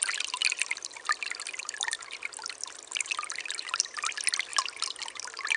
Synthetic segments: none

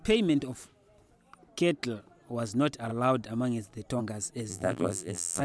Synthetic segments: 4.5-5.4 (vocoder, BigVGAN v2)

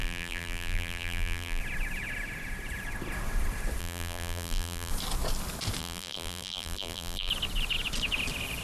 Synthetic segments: 0.0-1.6 (vocoder, BigVGAN v2); 3.8-4.9; 5.8-7.3